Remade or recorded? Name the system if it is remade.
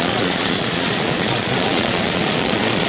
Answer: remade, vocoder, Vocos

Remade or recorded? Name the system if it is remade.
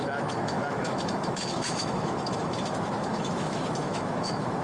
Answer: remade, autoencoder, DAC-VAE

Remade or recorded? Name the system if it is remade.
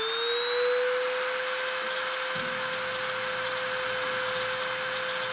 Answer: recorded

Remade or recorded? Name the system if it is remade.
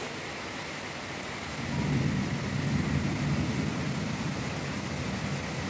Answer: recorded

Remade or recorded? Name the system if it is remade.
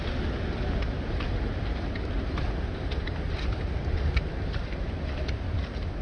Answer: recorded